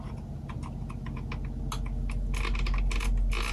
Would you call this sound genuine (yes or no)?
yes